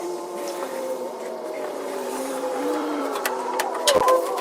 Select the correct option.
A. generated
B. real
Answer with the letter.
A